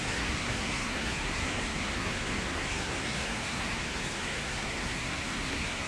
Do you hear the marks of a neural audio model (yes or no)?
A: yes